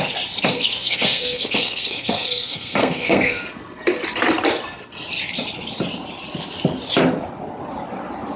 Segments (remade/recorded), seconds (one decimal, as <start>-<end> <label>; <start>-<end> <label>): 0.0-0.5 recorded; 0.5-3.4 remade; 3.4-8.4 recorded

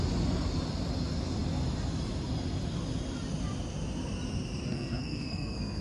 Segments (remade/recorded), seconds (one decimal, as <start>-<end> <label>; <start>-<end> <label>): 0.0-4.7 recorded; 4.7-5.8 remade

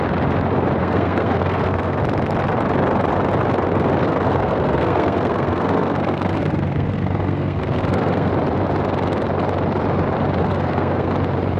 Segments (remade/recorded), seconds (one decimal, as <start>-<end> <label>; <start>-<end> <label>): 0.0-0.8 recorded; 0.8-2.0 remade; 2.0-4.0 recorded; 4.0-8.3 remade; 8.3-10.4 recorded; 10.4-11.1 remade; 11.1-11.6 recorded

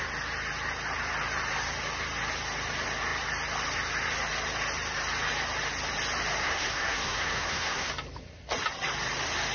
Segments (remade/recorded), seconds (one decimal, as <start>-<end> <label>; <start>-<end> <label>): 0.0-6.4 recorded; 6.4-7.9 remade; 7.9-9.5 recorded

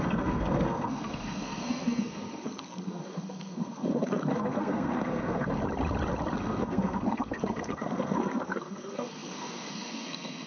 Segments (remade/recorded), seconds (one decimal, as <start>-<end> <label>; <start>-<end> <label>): 0.0-5.6 remade; 5.6-6.4 recorded; 6.4-10.5 remade

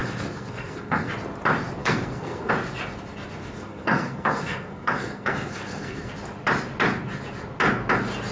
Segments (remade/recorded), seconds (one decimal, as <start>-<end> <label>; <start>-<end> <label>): 0.0-1.1 remade; 1.1-1.8 recorded; 1.8-2.5 remade; 2.5-3.4 recorded; 3.4-6.1 remade; 6.1-8.3 recorded